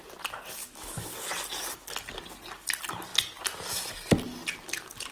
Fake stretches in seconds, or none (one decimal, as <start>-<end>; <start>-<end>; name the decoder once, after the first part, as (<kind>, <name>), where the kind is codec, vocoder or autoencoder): 0.6-1.3 (autoencoder, DAC-VAE)